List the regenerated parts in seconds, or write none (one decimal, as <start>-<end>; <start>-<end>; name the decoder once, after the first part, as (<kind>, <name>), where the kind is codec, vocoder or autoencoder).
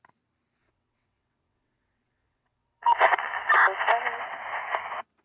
0.6-3.5 (vocoder, WaveNeXt)